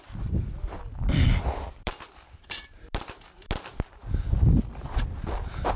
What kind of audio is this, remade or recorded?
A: recorded